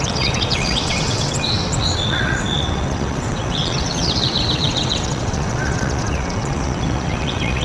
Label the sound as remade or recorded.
remade